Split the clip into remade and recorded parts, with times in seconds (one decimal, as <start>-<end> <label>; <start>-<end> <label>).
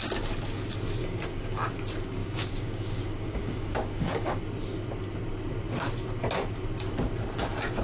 0.0-1.0 recorded; 1.0-1.6 remade; 1.6-2.2 recorded; 2.2-4.4 remade; 4.4-7.8 recorded